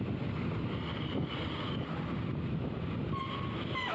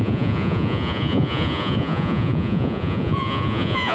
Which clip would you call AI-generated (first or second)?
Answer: second